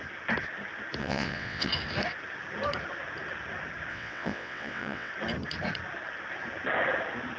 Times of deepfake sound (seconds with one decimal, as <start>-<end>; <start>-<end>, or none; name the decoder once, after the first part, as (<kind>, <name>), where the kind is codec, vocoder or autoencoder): 1.0-1.7 (vocoder, WaveNeXt); 3.9-5.1